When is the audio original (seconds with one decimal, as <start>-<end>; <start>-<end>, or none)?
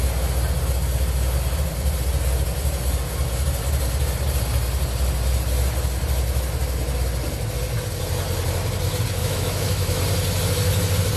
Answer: 0.0-9.2; 10.0-11.2